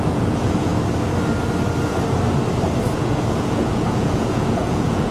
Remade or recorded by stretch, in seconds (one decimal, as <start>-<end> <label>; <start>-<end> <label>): 0.0-0.7 remade; 0.7-3.0 recorded; 3.0-5.1 remade